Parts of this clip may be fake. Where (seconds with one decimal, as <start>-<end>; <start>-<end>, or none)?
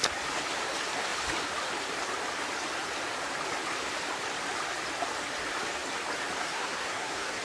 6.4-7.4